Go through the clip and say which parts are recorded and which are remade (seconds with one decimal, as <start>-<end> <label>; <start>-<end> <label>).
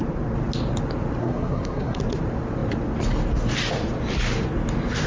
0.0-1.2 recorded; 1.2-2.0 remade; 2.0-5.1 recorded